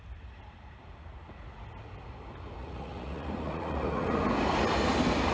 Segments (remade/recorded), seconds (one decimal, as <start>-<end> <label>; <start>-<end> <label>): 0.0-2.6 recorded; 2.6-4.2 remade; 4.2-5.3 recorded